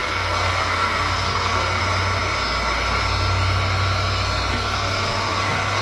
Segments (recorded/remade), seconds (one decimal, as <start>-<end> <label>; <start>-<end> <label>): 0.0-1.8 remade; 1.8-4.5 recorded; 4.5-5.8 remade